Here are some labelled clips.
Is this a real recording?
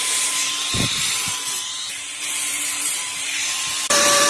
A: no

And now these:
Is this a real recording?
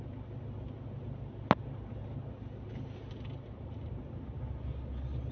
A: yes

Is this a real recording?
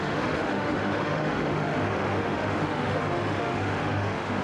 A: no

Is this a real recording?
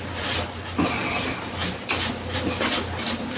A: yes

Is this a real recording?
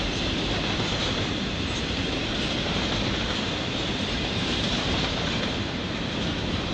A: no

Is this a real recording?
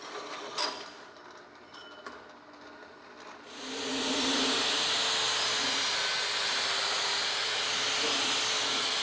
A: yes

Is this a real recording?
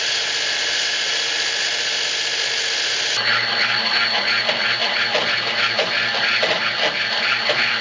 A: yes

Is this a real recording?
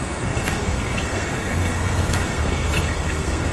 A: no